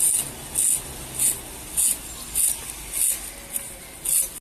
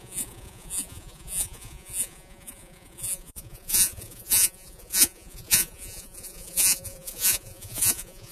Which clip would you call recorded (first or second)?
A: first